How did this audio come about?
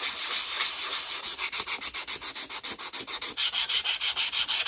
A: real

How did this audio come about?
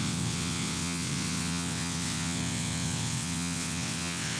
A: fake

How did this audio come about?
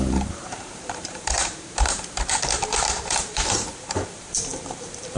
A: fake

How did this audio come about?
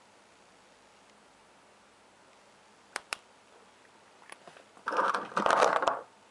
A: real